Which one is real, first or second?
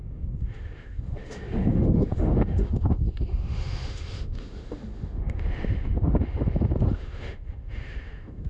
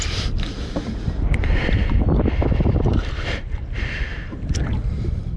second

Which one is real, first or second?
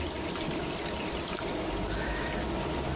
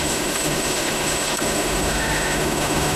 first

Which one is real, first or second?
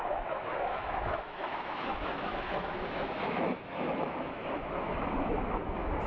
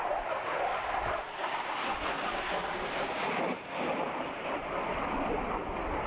second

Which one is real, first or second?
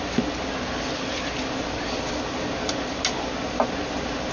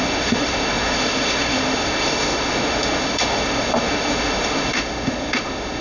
first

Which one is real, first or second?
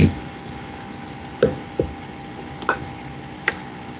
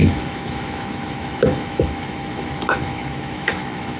first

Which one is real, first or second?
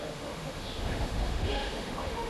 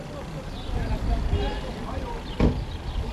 second